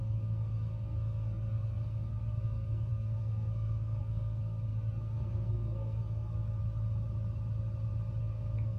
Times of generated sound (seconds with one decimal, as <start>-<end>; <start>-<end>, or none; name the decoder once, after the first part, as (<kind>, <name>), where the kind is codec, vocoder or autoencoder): 0.0-6.6 (codec, SNAC); 8.2-8.8